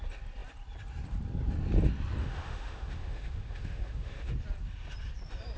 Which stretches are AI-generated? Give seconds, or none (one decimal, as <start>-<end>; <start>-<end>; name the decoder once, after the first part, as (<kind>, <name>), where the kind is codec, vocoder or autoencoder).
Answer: 2.2-4.3 (autoencoder, DAC-VAE)